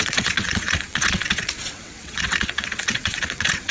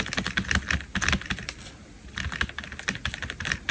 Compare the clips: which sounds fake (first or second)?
first